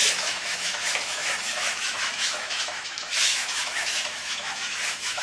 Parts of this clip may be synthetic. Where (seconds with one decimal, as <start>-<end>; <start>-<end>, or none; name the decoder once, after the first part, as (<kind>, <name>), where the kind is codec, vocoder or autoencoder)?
0.0-5.2 (autoencoder, DAC-VAE)